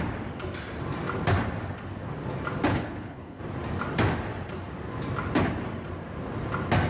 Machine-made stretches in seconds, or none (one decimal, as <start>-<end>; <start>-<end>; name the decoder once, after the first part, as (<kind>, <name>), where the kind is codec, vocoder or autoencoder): 2.7-3.4 (codec, HILCodec)